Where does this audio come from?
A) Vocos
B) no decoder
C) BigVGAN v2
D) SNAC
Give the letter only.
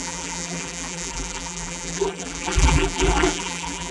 C